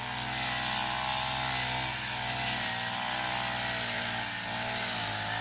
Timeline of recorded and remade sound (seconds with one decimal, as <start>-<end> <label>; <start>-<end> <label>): 0.0-5.4 recorded